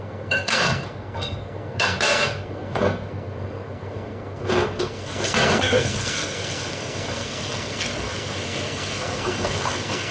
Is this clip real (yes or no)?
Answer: no